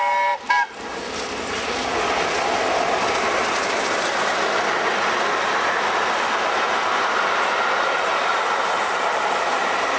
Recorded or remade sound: recorded